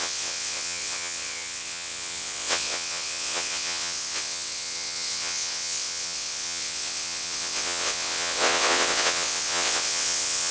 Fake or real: fake